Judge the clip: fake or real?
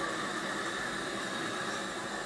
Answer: real